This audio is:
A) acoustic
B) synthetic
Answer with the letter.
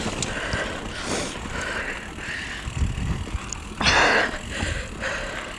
A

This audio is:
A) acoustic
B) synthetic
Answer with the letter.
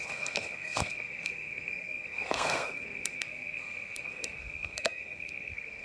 B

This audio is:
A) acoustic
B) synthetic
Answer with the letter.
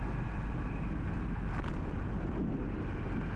A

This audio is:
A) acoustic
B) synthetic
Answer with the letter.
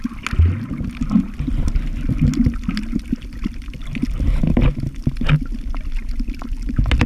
A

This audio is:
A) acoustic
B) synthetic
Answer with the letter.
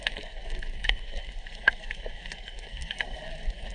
B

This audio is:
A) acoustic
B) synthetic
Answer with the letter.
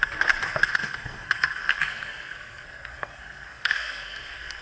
B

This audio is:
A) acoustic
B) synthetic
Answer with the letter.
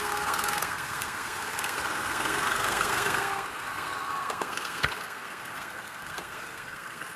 B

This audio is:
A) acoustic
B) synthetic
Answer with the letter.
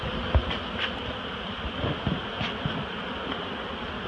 A